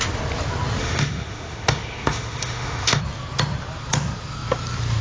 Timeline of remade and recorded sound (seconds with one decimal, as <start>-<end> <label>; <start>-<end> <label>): 0.0-0.8 recorded; 0.8-3.0 remade; 3.0-5.0 recorded